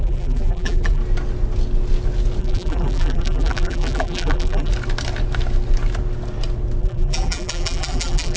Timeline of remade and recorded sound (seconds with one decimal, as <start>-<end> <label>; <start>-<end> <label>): 0.0-1.0 remade; 1.0-2.4 recorded; 2.4-4.7 remade; 4.7-6.8 recorded; 6.8-8.4 remade